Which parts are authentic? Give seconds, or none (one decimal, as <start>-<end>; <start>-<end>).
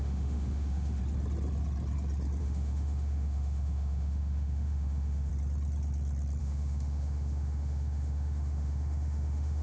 1.0-2.4; 5.3-6.4